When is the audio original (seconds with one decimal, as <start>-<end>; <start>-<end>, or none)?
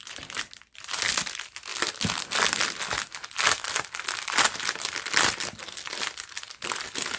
0.0-7.2